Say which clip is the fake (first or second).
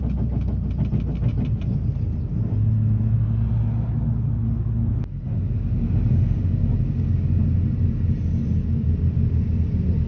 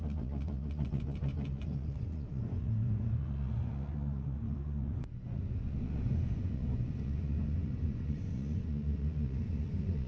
second